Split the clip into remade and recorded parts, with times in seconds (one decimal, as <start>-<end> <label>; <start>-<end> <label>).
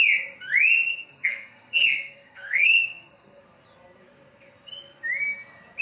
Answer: 0.0-0.9 recorded; 0.9-3.4 remade; 3.4-5.8 recorded